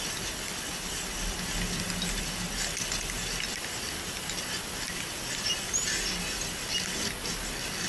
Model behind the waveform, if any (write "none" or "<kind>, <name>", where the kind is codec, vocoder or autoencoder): none